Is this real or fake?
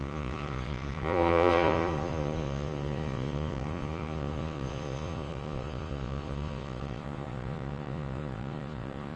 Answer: fake